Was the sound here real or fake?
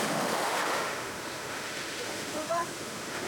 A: fake